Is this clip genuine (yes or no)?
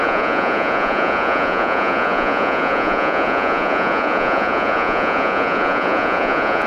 no